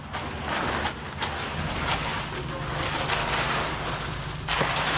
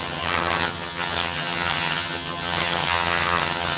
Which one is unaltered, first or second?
first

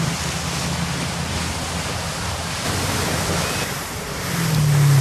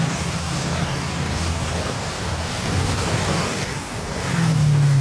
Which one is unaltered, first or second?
first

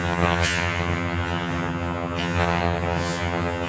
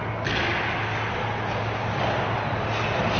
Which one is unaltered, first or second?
second